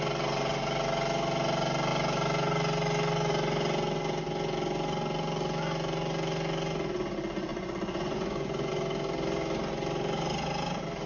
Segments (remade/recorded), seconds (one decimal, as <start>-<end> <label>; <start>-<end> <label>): 0.0-7.5 recorded; 7.5-8.7 remade; 8.7-11.1 recorded